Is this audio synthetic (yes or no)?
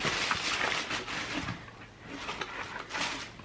no